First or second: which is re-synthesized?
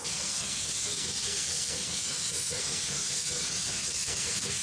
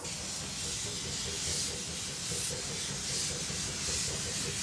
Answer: first